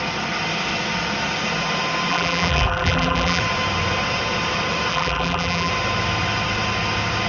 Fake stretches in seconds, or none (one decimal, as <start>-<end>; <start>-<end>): 2.1-3.4; 4.9-5.7